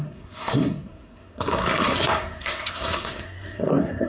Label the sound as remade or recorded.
remade